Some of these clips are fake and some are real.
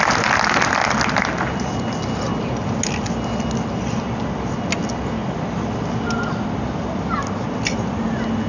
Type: real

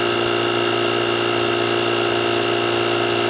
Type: real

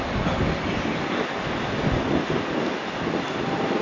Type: real